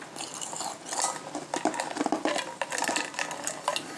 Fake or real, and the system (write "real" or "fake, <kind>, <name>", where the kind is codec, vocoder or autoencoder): real